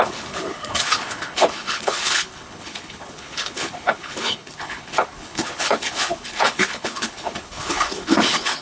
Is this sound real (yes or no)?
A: no